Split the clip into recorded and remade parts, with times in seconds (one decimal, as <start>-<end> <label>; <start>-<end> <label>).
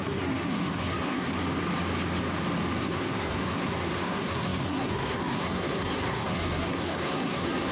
0.0-1.3 remade; 1.3-2.8 recorded; 2.8-7.7 remade